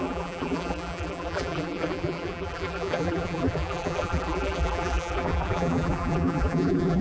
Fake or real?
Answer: fake